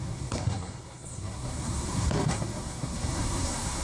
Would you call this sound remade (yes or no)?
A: yes